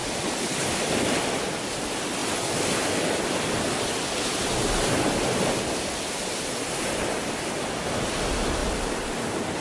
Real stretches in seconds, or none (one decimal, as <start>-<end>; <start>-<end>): 0.0-9.6

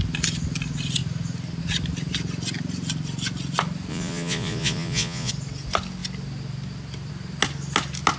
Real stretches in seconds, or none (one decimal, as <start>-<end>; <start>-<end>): 0.0-3.9; 5.3-8.2

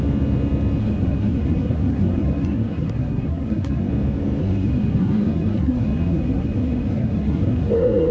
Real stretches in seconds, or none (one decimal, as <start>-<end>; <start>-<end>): 0.0-0.8; 3.9-4.4